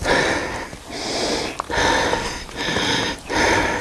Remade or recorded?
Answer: recorded